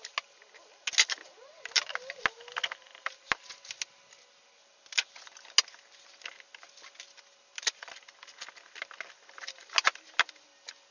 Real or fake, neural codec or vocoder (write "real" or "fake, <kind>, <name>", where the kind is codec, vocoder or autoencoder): real